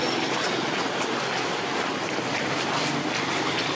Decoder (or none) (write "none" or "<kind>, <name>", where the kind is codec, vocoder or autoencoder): none